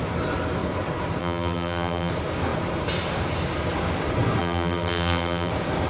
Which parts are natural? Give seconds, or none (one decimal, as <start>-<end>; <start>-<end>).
0.0-1.2; 2.1-4.4; 5.5-5.9